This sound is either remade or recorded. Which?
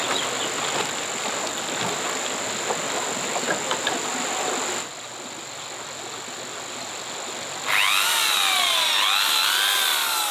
recorded